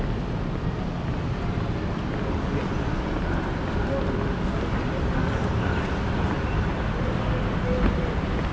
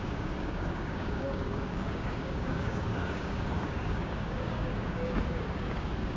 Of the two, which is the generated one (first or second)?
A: second